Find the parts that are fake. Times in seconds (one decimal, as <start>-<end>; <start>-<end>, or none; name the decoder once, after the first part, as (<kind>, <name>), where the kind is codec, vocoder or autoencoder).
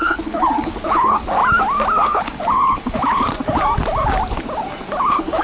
0.0-1.4 (codec, HILCodec); 2.0-3.3; 5.0-5.4